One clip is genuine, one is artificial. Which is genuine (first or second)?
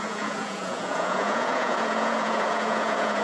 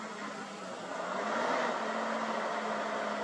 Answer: second